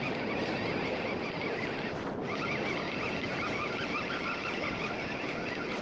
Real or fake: real